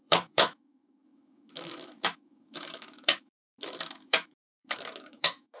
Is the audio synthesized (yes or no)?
yes